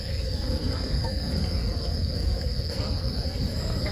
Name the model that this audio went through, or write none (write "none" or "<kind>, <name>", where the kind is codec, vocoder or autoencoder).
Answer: codec, SNAC